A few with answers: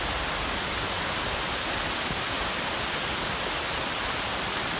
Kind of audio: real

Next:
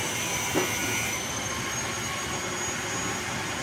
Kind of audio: real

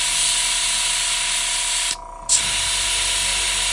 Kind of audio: real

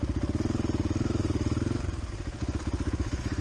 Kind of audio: real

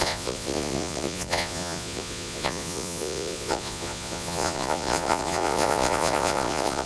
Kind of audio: fake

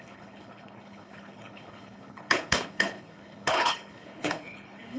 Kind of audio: fake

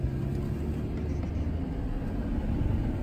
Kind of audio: real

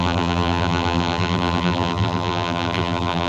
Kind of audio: fake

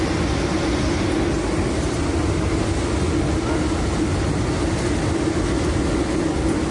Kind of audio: real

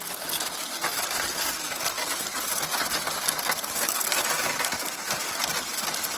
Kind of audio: real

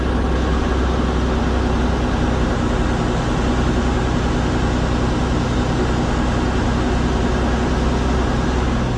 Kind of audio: real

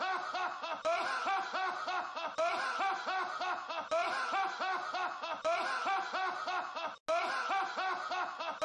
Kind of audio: real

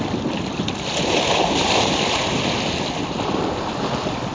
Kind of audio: real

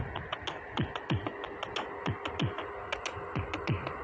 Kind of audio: real